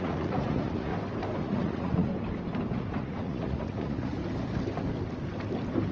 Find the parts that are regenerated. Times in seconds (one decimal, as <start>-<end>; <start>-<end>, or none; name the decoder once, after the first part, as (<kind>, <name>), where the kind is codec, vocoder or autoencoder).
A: 0.0-0.9 (vocoder, Vocos); 1.4-2.1; 2.7-4.2